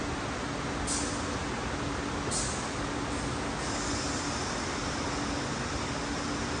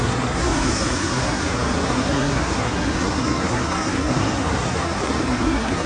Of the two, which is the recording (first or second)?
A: first